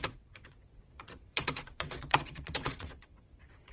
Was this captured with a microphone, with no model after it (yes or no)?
no